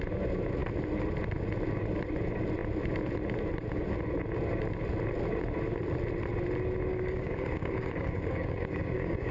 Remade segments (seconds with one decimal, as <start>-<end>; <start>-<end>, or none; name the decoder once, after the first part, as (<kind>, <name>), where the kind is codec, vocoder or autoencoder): 6.9-9.3 (codec, DAC)